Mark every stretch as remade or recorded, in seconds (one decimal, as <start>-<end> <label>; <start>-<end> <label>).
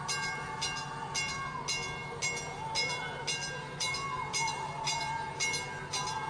0.0-6.3 recorded